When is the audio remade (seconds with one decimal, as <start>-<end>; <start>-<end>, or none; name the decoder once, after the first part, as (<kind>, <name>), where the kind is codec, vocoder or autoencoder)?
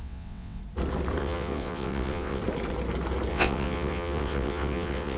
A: 0.0-0.6 (vocoder, WaveNeXt); 1.2-2.4; 3.3-5.2